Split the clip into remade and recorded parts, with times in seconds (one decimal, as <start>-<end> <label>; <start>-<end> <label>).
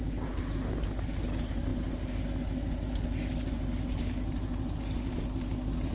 0.0-5.9 recorded